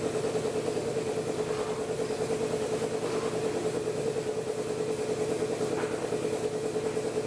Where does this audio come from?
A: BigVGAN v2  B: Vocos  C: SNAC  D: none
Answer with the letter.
D